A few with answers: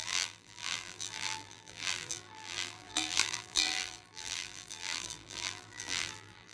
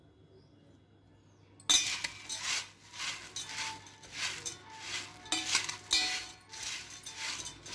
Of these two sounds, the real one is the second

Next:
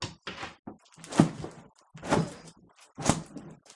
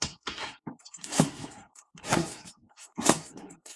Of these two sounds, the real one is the first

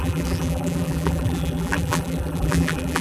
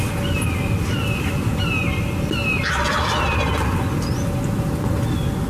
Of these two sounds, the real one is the second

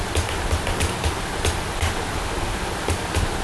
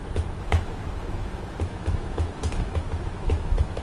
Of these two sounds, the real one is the first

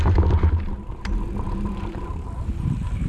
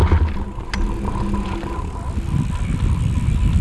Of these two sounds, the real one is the second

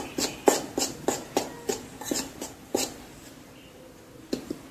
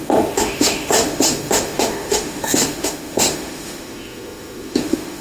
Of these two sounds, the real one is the first